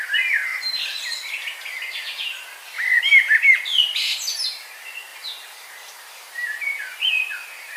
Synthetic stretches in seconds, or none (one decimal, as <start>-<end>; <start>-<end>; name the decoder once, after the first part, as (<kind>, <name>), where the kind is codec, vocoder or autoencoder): 0.0-0.5 (vocoder, BigVGAN v2); 3.0-7.8